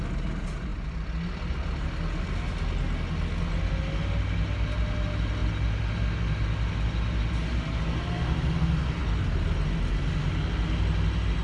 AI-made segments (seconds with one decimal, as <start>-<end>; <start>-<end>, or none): none